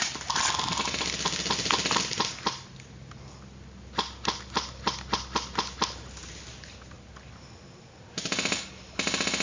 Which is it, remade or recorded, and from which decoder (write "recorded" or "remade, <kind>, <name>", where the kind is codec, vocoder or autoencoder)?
recorded